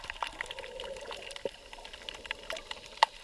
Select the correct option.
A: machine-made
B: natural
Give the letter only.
B